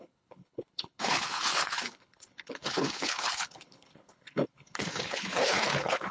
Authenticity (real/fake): fake